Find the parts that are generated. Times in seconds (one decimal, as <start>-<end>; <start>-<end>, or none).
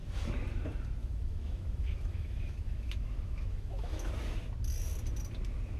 1.0-4.1